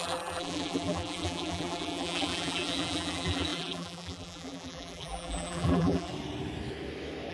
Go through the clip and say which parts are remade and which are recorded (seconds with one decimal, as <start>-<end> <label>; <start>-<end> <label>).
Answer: 0.0-6.1 remade; 6.1-7.3 recorded